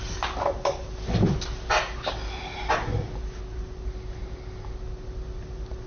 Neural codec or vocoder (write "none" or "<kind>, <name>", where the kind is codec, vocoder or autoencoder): none